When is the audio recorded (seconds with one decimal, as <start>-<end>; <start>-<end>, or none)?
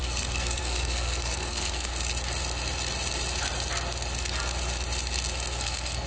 1.9-5.6